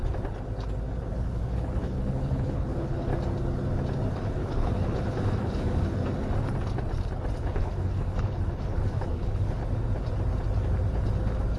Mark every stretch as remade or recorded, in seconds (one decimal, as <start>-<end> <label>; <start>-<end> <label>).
0.0-1.1 recorded; 1.1-3.1 remade; 3.1-4.1 recorded; 4.1-6.0 remade; 6.0-7.4 recorded; 7.4-9.6 remade; 9.6-11.6 recorded